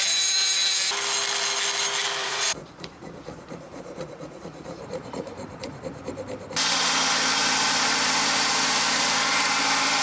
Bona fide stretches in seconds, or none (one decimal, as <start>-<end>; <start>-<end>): 0.0-2.2; 6.1-10.0